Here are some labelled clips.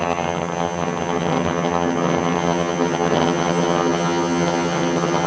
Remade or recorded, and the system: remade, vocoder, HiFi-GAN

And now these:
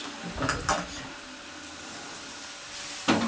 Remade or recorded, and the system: recorded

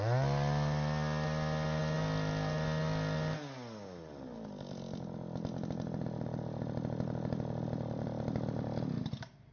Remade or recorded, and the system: recorded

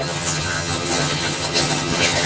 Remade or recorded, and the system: remade, vocoder, HiFi-GAN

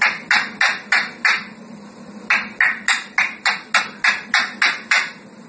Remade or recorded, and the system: recorded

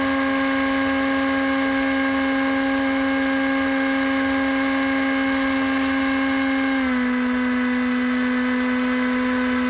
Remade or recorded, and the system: recorded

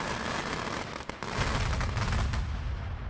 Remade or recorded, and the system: recorded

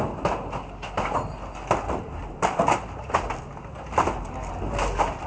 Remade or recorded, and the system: recorded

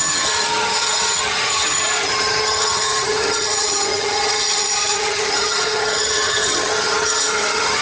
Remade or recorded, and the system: remade, vocoder, HiFi-GAN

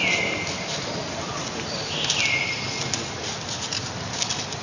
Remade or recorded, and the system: recorded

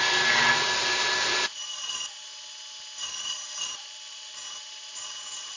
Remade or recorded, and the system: recorded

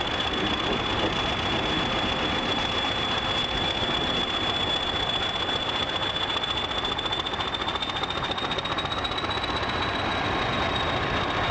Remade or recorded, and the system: recorded